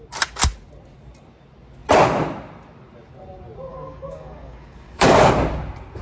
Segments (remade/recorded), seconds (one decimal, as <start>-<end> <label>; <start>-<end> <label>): 0.0-3.7 recorded; 3.7-5.3 remade; 5.3-6.0 recorded